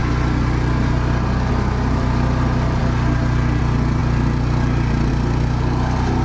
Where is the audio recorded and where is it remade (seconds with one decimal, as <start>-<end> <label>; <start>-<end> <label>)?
0.0-6.2 recorded